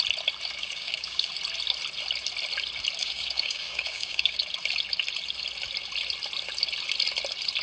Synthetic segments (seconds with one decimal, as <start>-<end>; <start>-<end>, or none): 0.6-1.3; 3.0-4.4